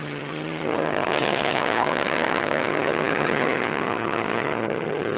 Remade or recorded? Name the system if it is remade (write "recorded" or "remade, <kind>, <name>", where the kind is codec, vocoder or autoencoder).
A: remade, vocoder, HiFi-GAN